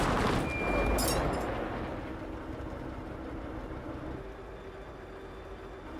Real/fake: real